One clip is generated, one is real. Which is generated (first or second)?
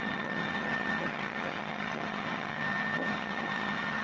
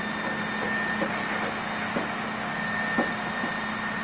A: first